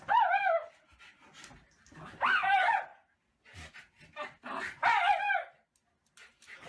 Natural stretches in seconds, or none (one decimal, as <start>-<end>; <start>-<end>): 0.0-6.7